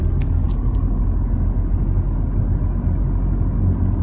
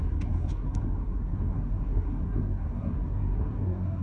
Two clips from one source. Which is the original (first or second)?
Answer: first